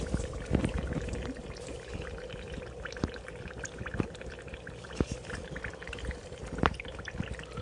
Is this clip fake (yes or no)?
yes